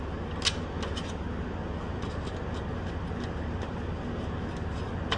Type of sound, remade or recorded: recorded